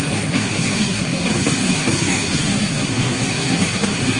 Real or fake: fake